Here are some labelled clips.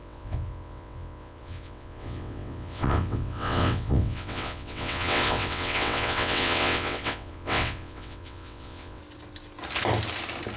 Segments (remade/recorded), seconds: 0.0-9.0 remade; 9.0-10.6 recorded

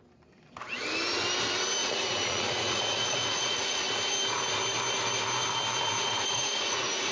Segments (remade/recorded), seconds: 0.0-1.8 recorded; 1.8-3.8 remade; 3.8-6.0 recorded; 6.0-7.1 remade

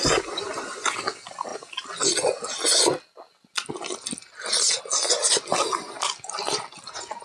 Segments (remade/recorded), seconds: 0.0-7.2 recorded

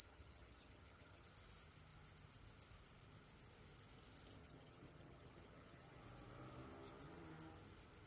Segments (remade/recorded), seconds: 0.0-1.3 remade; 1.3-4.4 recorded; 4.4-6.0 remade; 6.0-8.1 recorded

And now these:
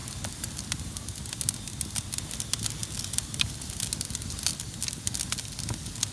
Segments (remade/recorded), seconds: 0.0-6.1 recorded